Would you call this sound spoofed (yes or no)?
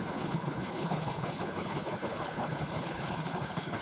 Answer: yes